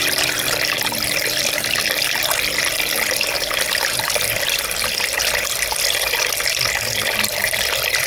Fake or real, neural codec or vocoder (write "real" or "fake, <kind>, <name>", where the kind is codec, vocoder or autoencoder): fake, vocoder, BigVGAN v2